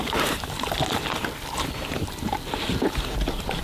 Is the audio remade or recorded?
recorded